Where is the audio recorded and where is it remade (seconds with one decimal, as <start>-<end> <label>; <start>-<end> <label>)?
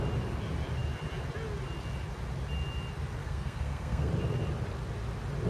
0.0-3.2 recorded; 3.2-4.1 remade; 4.1-5.5 recorded